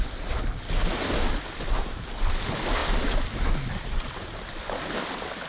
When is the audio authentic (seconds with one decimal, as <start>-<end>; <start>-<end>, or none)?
0.0-5.5